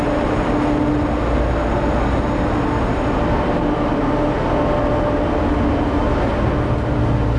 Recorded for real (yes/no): yes